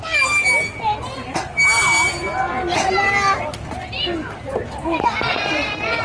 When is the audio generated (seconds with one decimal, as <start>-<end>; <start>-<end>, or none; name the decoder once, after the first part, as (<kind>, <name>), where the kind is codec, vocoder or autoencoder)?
none